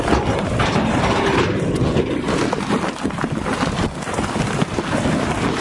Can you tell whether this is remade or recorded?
remade